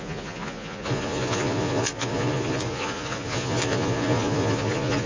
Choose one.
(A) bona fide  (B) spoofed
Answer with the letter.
B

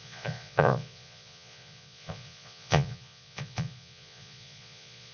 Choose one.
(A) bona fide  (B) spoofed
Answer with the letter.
B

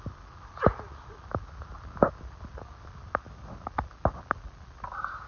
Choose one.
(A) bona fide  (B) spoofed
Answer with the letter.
A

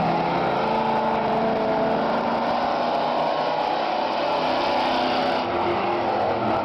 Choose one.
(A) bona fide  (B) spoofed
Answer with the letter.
A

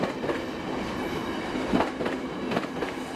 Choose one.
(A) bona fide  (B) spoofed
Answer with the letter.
A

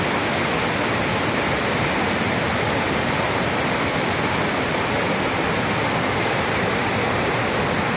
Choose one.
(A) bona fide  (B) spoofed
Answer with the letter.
A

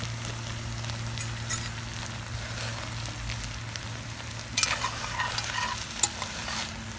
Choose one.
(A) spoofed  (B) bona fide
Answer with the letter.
B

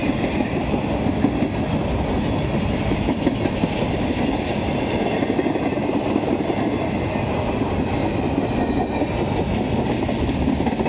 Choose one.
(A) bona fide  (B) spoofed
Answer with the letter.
A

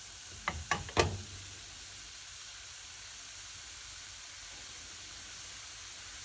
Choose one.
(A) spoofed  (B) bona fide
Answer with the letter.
B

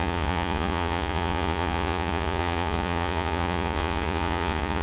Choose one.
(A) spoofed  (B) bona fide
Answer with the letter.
A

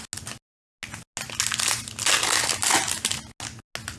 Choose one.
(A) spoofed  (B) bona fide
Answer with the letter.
B